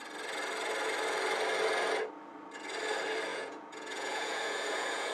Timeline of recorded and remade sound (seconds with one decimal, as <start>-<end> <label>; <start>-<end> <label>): 0.0-3.3 recorded; 3.3-5.1 remade